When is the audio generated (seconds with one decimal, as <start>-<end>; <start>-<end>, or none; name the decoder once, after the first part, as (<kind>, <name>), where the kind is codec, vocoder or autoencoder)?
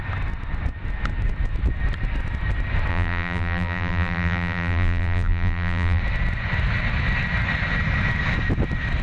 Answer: 2.9-6.0 (vocoder, BigVGAN v2)